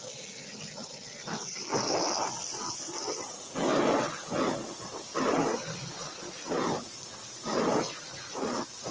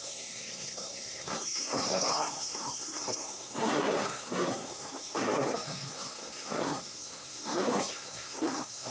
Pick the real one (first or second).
first